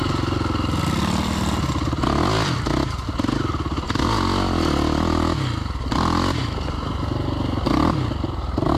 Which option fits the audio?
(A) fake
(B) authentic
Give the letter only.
B